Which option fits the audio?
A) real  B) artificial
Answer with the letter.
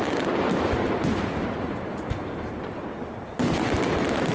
A